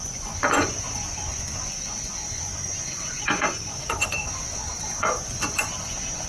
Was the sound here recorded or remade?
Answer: remade